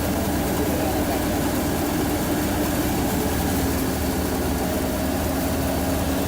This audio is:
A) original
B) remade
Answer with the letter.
A